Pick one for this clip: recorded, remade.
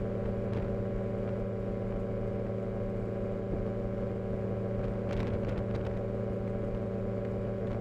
recorded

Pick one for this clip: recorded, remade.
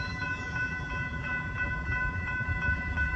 remade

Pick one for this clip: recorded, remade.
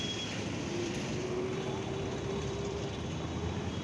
remade